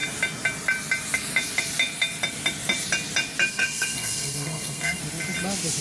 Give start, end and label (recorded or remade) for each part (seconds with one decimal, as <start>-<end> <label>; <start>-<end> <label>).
0.0-3.5 recorded; 3.5-5.0 remade; 5.0-5.8 recorded